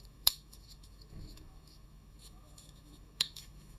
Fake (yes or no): yes